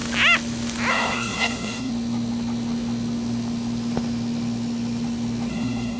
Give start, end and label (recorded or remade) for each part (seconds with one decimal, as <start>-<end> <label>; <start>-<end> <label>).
0.0-0.9 recorded; 0.9-1.9 remade; 1.9-5.5 recorded; 5.5-6.0 remade